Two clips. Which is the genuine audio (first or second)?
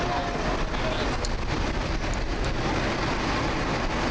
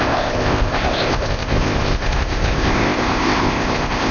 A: first